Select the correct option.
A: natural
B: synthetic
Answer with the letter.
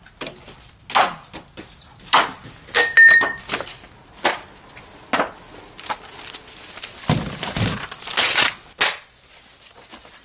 A